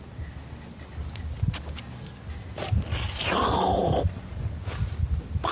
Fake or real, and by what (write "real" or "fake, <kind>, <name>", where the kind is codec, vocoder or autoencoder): real